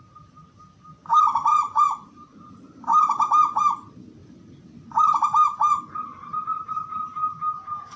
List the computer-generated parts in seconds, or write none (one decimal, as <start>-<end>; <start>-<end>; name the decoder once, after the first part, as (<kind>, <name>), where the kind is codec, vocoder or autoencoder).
1.5-2.4 (vocoder, Vocos)